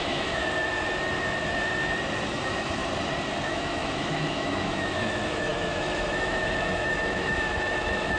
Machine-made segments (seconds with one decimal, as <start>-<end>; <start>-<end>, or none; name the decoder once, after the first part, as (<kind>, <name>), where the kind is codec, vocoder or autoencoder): 0.0-0.4 (autoencoder, DAC-VAE); 2.3-2.8; 3.5-8.2